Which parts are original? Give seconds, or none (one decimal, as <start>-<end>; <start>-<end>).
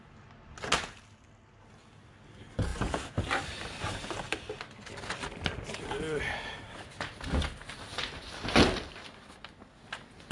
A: 0.0-10.3